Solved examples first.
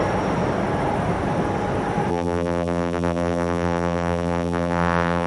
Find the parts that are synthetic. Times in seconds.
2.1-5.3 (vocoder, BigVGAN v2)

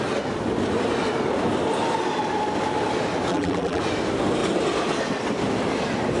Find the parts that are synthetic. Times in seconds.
3.3-3.8 (vocoder, BigVGAN v2)